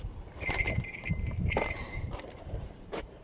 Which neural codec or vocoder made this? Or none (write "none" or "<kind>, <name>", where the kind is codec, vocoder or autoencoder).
vocoder, BigVGAN v2